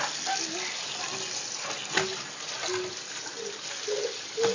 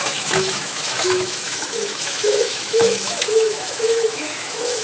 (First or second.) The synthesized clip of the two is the second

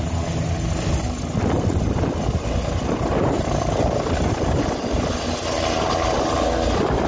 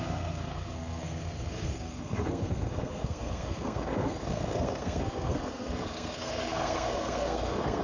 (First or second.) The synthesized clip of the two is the second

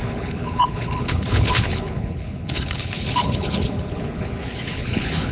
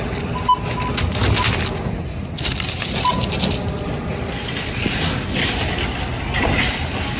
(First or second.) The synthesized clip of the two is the first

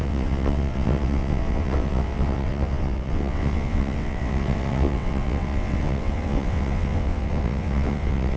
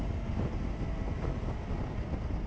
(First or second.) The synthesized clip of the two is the first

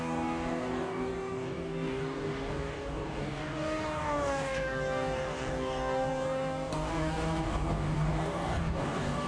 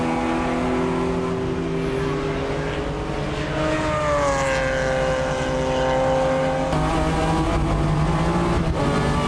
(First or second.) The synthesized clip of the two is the first